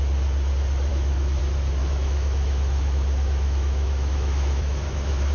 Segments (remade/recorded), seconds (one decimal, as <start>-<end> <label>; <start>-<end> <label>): 0.0-0.9 recorded; 0.9-1.4 remade; 1.4-1.8 recorded; 1.8-5.3 remade